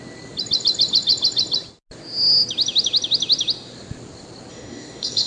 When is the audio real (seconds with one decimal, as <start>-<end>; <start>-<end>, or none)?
0.0-4.5